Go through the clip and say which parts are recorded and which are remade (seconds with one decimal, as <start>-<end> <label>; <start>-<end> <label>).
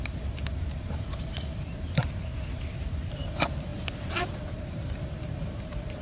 0.0-6.0 remade